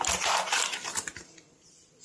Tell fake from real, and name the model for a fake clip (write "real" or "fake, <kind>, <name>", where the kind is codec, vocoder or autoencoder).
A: real